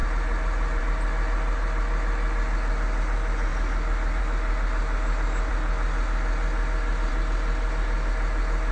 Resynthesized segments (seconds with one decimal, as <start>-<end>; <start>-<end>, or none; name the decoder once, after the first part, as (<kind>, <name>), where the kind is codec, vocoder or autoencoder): 0.8-3.5 (vocoder, BigVGAN v2); 4.2-5.5; 7.1-8.7